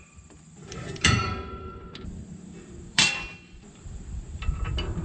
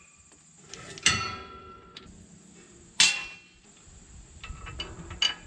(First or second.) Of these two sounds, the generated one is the first